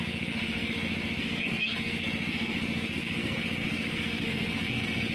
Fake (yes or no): yes